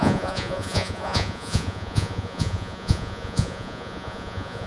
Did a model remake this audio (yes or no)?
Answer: yes